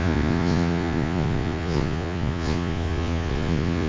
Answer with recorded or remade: remade